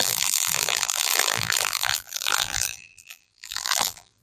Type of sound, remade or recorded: remade